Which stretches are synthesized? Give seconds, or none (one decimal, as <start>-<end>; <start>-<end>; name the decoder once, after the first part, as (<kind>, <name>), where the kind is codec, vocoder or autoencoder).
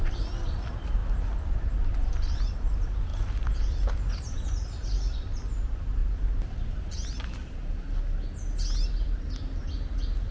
0.0-1.0 (vocoder, BigVGAN v2); 2.0-7.6; 8.9-10.3